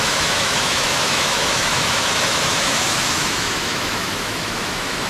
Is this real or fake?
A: fake